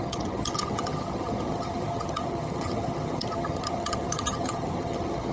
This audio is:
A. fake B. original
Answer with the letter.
A